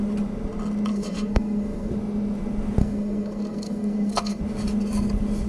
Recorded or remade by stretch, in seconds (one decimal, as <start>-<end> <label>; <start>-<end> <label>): 0.0-0.9 recorded; 0.9-1.9 remade; 1.9-2.8 recorded; 2.8-4.4 remade; 4.4-5.5 recorded